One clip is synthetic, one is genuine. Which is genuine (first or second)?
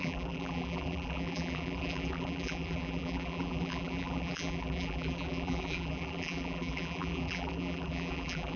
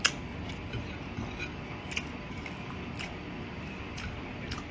second